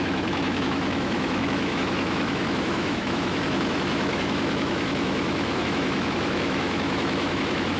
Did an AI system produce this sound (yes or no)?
yes